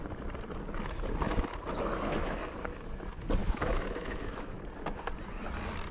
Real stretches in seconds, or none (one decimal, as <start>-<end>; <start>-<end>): 0.0-3.4; 4.5-5.9